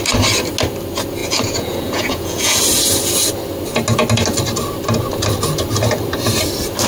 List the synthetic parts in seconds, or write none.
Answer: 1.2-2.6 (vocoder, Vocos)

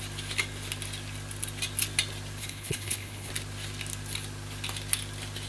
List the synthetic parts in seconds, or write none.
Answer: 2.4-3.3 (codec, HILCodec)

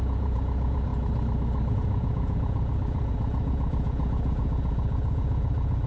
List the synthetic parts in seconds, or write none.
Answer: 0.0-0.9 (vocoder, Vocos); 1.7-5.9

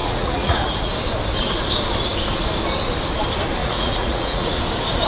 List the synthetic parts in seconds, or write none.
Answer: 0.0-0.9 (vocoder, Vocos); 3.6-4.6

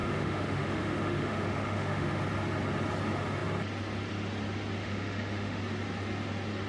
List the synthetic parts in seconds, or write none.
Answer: 0.0-2.2 (autoencoder, DAC-VAE); 4.8-5.6

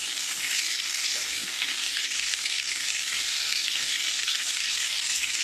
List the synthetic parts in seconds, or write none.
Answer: 0.0-5.4 (codec, DAC)